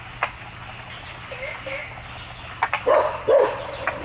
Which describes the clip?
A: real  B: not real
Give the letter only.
A